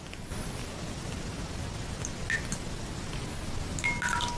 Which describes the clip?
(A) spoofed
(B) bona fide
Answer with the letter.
B